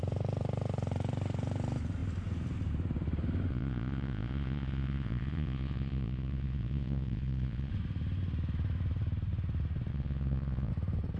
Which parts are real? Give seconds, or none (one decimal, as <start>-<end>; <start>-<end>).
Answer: 0.0-3.5; 7.7-9.9; 10.7-11.2